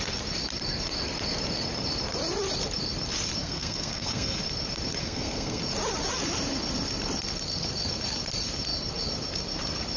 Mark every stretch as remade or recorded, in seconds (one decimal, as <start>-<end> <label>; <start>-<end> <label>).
0.0-3.4 recorded; 3.4-4.4 remade; 4.4-5.0 recorded; 5.0-5.6 remade; 5.6-10.0 recorded